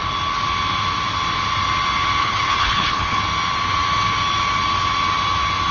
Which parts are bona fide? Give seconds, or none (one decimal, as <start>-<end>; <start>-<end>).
0.0-2.2; 3.2-5.7